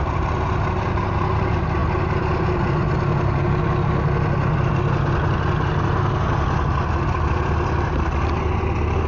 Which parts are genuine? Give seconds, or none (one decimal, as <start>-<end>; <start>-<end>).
0.0-9.1